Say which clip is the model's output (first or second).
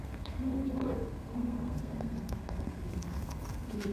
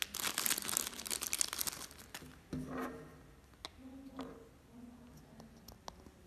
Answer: first